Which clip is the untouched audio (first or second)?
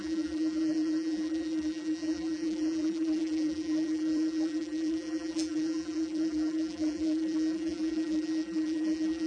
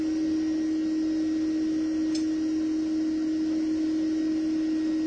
second